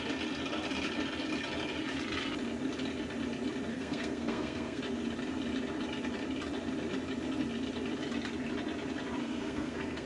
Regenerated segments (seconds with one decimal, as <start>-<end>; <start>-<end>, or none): 3.7-4.8; 9.2-10.1